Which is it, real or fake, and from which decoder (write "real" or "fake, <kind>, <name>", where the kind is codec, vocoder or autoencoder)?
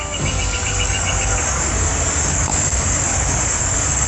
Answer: fake, codec, DAC